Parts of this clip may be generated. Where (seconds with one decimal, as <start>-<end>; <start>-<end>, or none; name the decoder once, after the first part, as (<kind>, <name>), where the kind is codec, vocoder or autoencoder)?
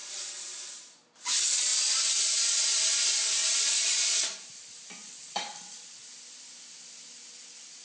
0.0-0.8 (vocoder, BigVGAN v2); 1.7-2.4; 3.4-4.0; 5.0-5.8